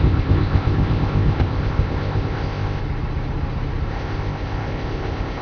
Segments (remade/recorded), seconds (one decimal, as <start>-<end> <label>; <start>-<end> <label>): 0.0-2.8 remade; 2.8-3.9 recorded; 3.9-5.4 remade